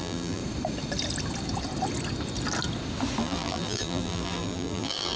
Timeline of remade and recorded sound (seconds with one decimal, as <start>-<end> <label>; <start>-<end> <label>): 0.0-0.4 remade; 0.4-3.2 recorded; 3.2-5.2 remade